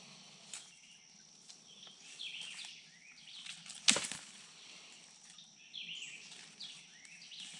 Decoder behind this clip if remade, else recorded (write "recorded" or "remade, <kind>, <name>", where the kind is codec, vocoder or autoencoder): recorded